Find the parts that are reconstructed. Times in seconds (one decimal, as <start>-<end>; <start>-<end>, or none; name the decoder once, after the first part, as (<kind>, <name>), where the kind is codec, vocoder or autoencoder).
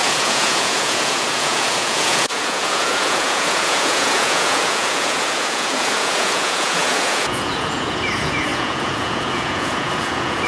0.0-10.5 (vocoder, Vocos)